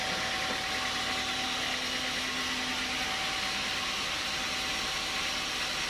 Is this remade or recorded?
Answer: recorded